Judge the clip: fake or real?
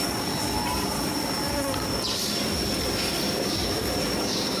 real